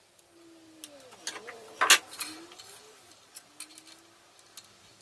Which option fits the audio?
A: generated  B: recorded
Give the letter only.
B